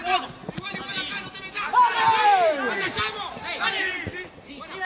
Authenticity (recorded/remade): recorded